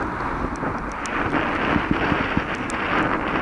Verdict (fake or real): real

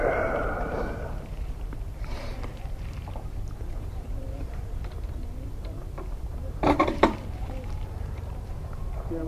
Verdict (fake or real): fake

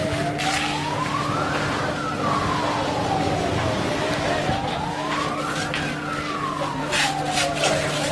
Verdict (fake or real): real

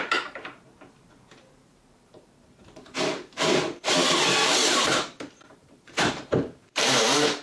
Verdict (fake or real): fake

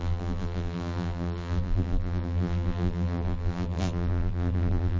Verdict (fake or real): fake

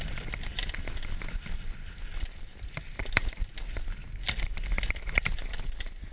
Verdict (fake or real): real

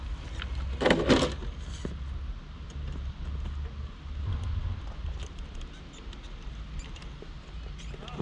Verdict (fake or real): real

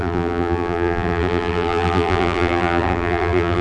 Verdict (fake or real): fake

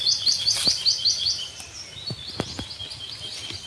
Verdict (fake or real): real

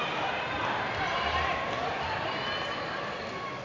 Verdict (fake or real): fake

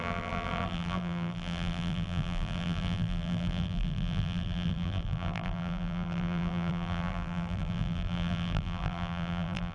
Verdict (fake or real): fake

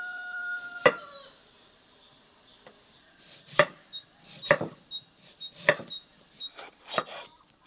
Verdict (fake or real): fake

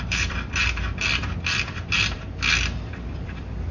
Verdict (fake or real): fake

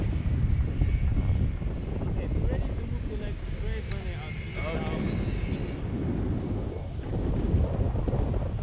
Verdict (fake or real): real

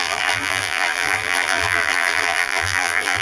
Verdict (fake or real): fake